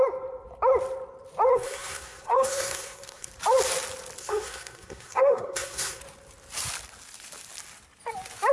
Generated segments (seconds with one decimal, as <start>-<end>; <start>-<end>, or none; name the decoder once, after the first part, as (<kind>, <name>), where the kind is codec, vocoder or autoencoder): 1.5-3.3 (codec, SNAC); 4.2-6.0